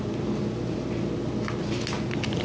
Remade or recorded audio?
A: recorded